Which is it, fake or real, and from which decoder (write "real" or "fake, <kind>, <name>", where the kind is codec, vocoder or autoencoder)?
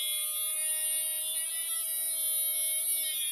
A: real